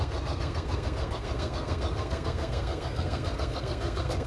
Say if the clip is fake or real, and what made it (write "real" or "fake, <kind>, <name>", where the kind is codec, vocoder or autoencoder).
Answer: fake, codec, SNAC